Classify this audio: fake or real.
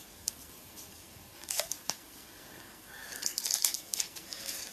fake